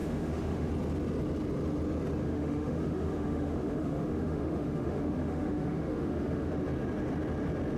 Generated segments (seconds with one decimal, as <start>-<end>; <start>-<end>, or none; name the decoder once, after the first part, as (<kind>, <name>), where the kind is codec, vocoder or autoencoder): 0.0-0.7 (autoencoder, DAC-VAE); 2.2-6.5